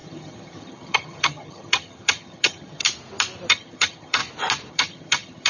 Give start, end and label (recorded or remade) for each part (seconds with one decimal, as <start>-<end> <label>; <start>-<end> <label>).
0.0-2.8 remade; 2.8-3.5 recorded; 3.5-4.2 remade; 4.2-4.7 recorded; 4.7-5.5 remade